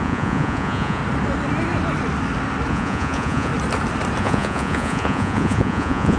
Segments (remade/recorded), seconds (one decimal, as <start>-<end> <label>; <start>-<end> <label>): 0.0-1.0 remade; 1.0-2.7 recorded; 2.7-3.5 remade; 3.5-4.2 recorded; 4.2-6.2 remade

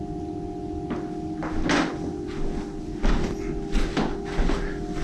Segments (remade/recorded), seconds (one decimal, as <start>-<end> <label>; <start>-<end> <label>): 0.0-5.0 recorded

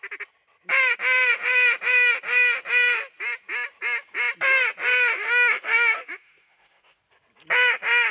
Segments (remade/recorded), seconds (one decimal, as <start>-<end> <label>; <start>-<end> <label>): 0.0-5.1 recorded; 5.1-7.0 remade; 7.0-8.1 recorded

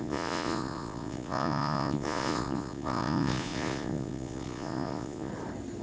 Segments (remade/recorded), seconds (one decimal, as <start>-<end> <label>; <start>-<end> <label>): 0.0-5.3 remade; 5.3-5.8 recorded

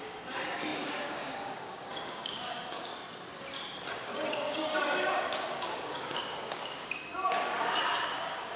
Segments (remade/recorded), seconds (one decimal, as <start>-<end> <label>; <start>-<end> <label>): 0.0-2.9 remade; 2.9-3.9 recorded; 3.9-8.6 remade

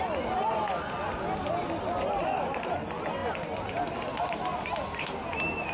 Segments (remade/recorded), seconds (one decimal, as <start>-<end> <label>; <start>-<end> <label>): 0.0-5.7 recorded

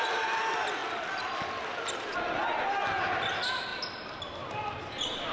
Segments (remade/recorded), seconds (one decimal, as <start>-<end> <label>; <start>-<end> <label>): 0.0-5.3 recorded

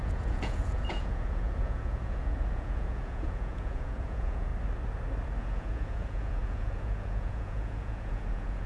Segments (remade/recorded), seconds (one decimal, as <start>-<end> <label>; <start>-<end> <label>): 0.0-4.5 remade; 4.5-5.4 recorded; 5.4-8.7 remade